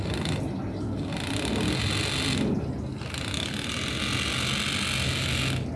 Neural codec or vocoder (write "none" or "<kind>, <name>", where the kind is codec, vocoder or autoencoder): none